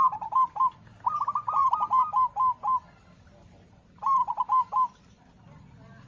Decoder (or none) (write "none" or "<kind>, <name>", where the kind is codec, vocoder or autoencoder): none